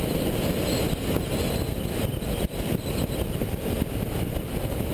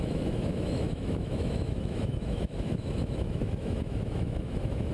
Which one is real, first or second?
first